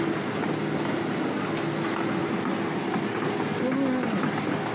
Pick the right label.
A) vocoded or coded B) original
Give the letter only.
B